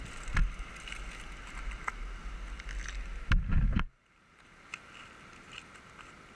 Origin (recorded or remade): recorded